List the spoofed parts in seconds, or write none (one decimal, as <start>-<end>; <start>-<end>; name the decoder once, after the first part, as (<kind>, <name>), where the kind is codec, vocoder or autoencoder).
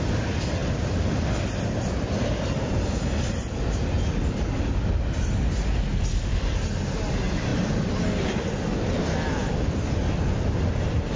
none